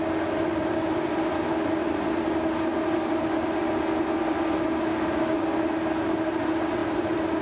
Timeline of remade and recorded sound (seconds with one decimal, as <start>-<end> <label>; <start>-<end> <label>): 0.0-7.4 recorded